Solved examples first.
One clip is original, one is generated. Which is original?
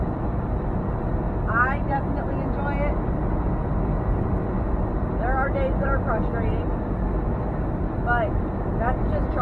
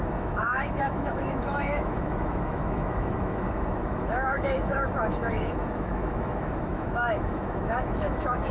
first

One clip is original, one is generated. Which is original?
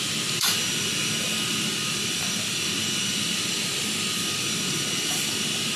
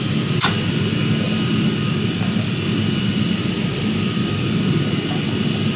second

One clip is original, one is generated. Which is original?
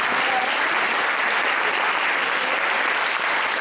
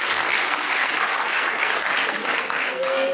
first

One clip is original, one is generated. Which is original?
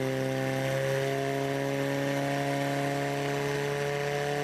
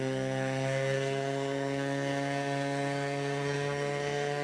first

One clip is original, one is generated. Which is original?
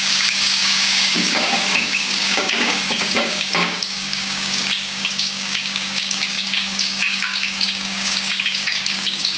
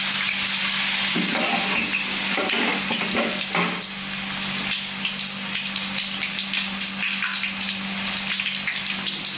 second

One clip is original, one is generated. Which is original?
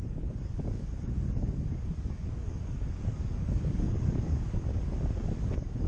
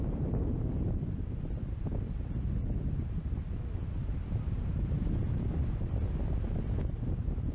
second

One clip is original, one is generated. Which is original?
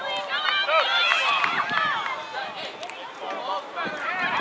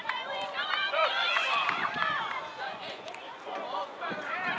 first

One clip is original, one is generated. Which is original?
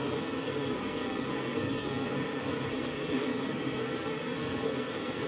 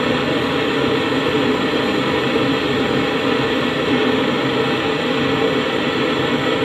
second